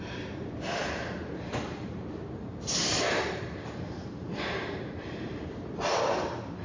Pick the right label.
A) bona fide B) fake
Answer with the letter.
B